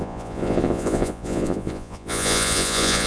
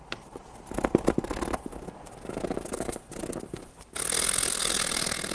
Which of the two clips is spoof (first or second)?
first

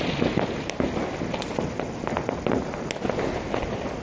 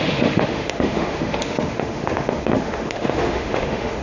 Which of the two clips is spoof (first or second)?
second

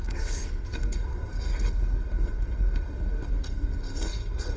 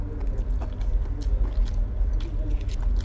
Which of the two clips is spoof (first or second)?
first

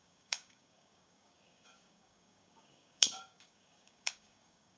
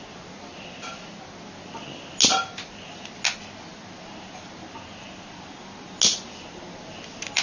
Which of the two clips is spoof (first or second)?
first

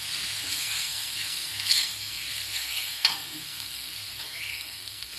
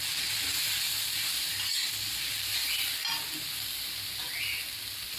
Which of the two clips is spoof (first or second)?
first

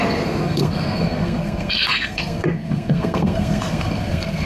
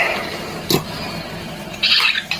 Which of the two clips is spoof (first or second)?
first